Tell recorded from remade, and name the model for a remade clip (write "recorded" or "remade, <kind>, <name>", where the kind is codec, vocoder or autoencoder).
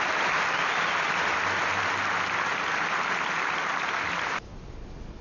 recorded